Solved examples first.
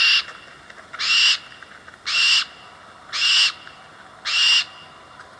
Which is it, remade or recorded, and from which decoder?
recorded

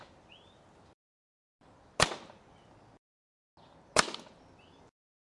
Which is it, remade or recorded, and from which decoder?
recorded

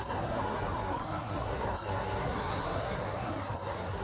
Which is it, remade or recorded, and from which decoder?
remade, codec, SNAC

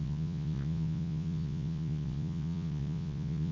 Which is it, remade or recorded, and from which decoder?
remade, vocoder, Vocos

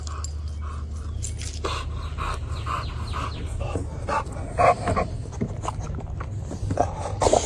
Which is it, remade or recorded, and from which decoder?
recorded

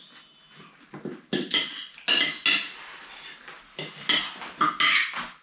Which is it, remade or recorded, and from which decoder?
recorded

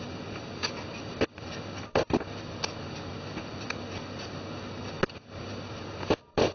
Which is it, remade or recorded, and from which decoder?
recorded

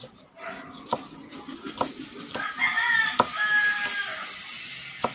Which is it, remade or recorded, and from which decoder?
recorded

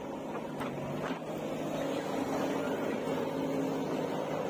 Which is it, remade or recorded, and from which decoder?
recorded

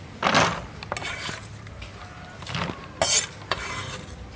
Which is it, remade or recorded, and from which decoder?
recorded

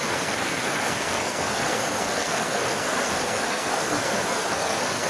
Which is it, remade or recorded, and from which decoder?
remade, codec, SNAC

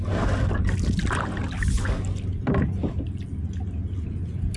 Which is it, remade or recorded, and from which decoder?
recorded